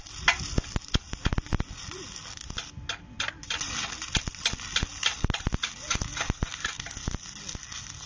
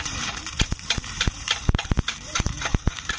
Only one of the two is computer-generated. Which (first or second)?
second